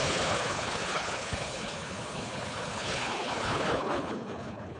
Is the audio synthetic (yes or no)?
yes